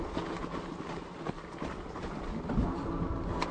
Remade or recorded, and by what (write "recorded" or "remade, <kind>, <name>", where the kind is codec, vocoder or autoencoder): recorded